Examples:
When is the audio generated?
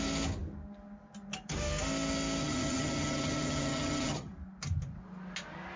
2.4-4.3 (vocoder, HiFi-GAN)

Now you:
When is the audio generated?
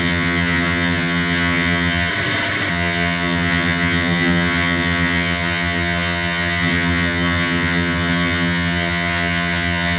0.0-2.1 (vocoder, HiFi-GAN); 2.7-10.0